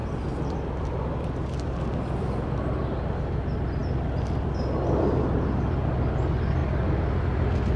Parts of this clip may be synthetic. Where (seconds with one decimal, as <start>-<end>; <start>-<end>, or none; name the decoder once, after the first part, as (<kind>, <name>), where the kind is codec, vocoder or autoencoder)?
none